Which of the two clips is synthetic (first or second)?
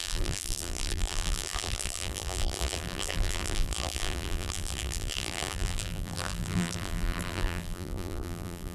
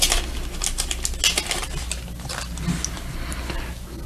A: first